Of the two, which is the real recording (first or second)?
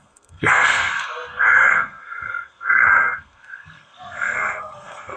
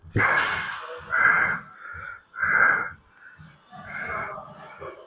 second